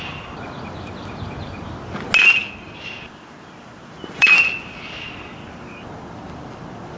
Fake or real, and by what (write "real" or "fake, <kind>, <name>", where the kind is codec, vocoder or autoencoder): real